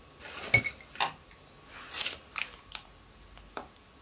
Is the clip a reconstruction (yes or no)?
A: no